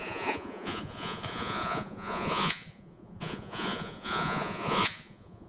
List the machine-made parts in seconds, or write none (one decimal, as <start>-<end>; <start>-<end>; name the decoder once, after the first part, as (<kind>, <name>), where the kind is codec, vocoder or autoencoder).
0.0-5.5 (vocoder, Vocos)